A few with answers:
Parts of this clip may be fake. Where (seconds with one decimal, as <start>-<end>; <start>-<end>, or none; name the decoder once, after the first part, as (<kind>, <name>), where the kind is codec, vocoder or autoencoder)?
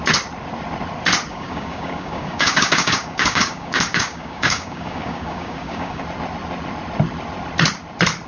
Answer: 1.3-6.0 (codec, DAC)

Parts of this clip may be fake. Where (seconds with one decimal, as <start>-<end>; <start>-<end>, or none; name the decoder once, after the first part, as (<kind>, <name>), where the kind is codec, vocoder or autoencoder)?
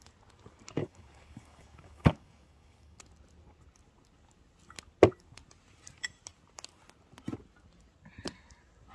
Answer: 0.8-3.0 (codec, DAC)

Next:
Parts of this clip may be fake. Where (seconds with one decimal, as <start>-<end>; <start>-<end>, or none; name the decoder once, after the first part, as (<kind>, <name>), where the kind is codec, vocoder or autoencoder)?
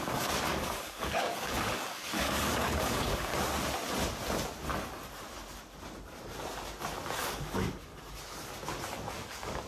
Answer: 0.0-3.3 (codec, DAC); 7.2-7.9; 9.1-9.7